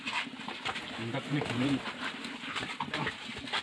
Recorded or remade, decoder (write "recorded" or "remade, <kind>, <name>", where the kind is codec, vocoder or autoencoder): remade, vocoder, BigVGAN v2